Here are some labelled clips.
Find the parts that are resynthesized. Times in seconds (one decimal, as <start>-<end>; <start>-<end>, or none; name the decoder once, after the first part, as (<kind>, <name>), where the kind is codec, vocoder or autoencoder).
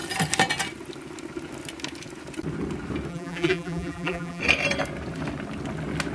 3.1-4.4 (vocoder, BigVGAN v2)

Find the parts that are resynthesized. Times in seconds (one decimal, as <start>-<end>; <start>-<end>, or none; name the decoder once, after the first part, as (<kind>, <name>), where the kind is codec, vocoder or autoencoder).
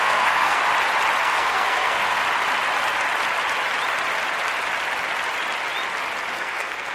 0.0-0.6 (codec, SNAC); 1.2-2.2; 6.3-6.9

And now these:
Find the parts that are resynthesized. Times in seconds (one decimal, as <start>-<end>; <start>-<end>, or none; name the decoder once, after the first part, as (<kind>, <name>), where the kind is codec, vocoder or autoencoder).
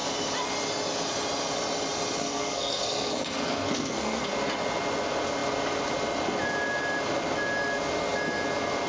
2.2-4.3 (codec, SNAC)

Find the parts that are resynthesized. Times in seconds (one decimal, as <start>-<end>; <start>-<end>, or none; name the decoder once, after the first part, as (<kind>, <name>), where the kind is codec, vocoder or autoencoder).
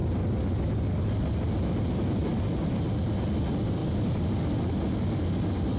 none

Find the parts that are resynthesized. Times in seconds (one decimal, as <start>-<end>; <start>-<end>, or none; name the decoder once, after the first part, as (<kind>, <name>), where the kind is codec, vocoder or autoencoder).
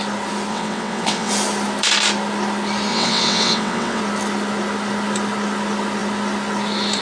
0.5-1.3 (vocoder, WaveNeXt); 2.9-4.0